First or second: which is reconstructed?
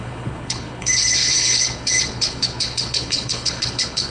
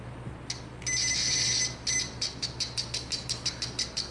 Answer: first